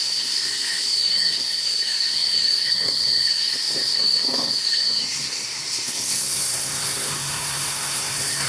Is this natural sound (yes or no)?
no